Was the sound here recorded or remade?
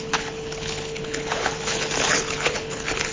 remade